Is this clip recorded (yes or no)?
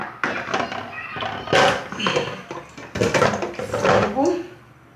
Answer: yes